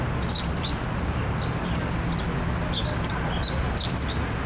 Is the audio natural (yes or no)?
yes